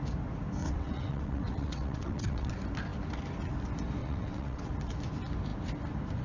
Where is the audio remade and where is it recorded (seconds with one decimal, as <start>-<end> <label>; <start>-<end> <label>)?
0.0-0.6 recorded; 0.6-2.5 remade; 2.5-4.0 recorded; 4.0-4.7 remade; 4.7-6.2 recorded